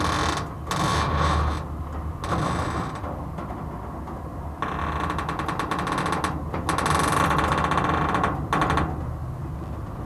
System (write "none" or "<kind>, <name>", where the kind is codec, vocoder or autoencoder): none